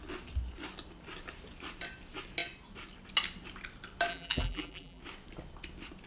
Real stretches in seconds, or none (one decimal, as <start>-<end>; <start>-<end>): 0.0-4.1; 5.0-6.1